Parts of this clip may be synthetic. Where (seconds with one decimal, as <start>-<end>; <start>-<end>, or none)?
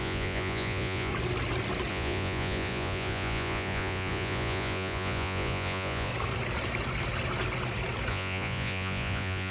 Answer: 0.0-1.1; 1.9-6.1; 8.1-9.5